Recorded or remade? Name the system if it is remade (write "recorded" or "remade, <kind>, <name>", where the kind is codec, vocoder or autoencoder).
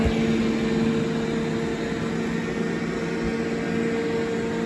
recorded